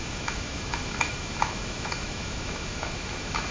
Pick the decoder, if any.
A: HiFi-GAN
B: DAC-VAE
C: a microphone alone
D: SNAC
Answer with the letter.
B